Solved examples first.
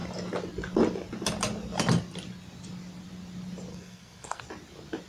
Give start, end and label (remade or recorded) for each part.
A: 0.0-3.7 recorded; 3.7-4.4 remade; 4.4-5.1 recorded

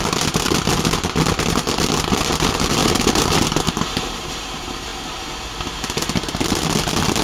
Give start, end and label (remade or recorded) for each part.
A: 0.0-2.8 recorded; 2.8-4.3 remade; 4.3-7.2 recorded

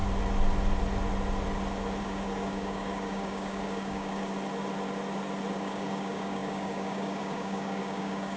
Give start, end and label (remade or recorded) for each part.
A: 0.0-2.0 recorded; 2.0-4.3 remade; 4.3-5.5 recorded; 5.5-8.4 remade

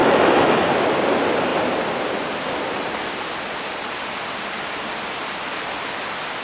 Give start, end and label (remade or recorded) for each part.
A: 0.0-0.7 remade; 0.7-6.4 recorded

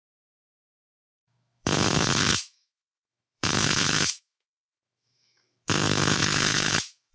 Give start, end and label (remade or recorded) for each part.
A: 0.0-7.1 remade

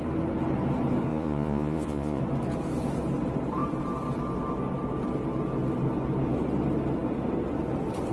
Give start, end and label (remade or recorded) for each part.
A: 0.0-1.1 recorded; 1.1-2.2 remade; 2.2-8.1 recorded